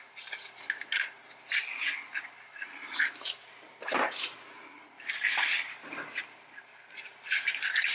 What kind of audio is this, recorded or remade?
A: recorded